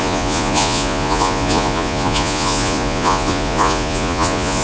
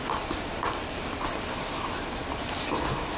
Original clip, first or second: second